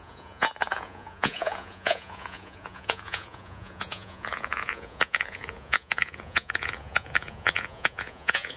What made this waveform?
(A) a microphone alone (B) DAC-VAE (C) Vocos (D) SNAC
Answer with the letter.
C